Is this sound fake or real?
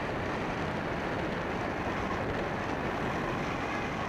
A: real